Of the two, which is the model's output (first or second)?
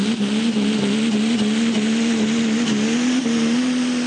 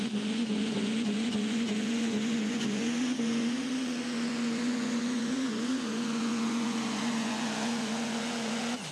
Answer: second